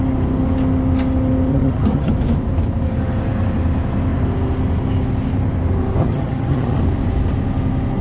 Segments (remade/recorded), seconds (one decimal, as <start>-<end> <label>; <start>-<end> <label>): 0.0-1.5 recorded; 1.5-2.1 remade; 2.1-6.0 recorded; 6.0-6.8 remade; 6.8-8.0 recorded